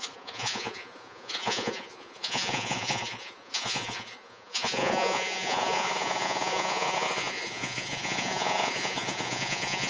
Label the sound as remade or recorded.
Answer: remade